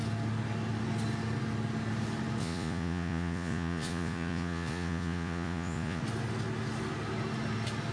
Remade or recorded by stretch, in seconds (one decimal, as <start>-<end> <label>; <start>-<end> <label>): 0.0-2.4 recorded; 2.4-6.0 remade; 6.0-7.9 recorded